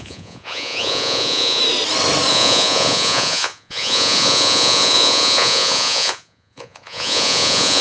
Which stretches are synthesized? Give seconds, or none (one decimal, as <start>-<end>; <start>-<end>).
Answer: 0.0-1.6; 2.3-7.8

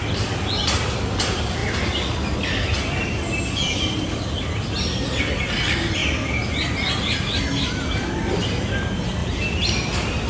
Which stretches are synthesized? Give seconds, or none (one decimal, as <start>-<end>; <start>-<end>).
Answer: 9.2-9.9

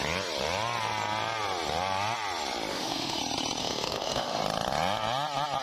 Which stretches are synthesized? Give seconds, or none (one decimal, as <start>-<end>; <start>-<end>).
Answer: 2.7-3.2; 3.6-4.4

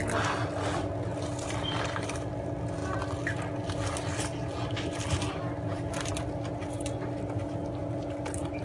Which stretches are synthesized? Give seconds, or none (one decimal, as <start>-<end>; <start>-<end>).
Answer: none

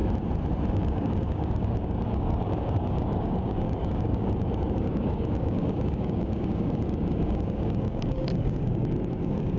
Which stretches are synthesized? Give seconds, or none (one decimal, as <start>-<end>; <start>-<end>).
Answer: 0.7-9.6

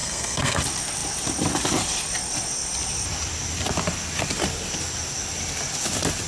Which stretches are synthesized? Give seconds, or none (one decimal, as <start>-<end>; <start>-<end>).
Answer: 0.0-0.6

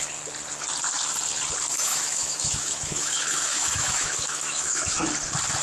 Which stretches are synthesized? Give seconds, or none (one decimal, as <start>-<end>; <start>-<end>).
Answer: 1.7-5.1

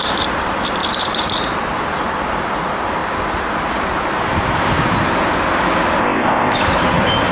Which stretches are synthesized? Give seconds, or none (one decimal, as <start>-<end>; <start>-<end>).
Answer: 6.0-6.6